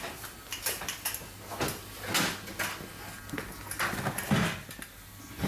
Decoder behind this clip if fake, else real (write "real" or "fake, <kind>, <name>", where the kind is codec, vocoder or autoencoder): real